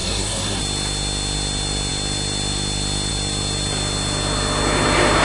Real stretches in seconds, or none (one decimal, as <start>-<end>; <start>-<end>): 0.6-5.2